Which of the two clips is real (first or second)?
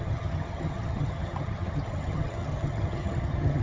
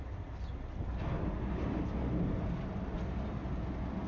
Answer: second